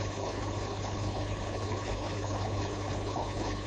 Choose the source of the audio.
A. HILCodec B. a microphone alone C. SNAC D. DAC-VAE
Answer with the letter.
A